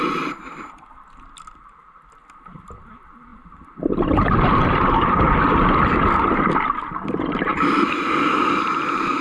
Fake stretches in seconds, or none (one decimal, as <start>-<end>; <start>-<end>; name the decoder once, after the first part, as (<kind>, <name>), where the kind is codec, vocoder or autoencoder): 3.3-5.4 (vocoder, BigVGAN v2); 7.5-9.2